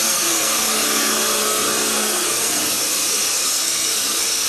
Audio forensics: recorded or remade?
remade